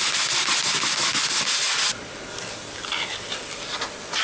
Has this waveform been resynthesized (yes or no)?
no